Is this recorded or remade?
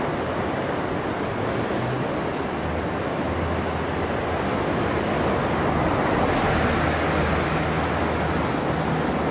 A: recorded